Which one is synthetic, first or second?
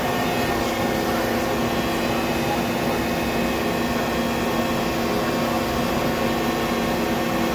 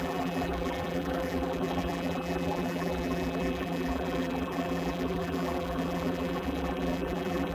second